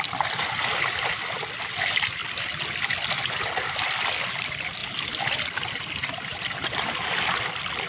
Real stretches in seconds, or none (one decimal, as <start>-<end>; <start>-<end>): 0.0-7.9